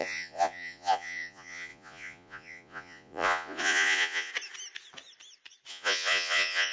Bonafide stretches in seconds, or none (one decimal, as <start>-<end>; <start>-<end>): 4.3-5.7